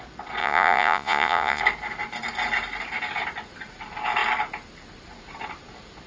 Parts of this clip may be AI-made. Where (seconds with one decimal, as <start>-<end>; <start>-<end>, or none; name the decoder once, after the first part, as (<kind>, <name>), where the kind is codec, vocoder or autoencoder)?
0.4-1.6 (vocoder, Vocos)